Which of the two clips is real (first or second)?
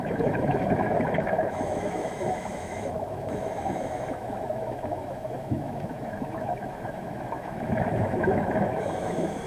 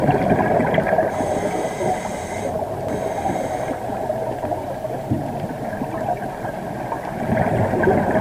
second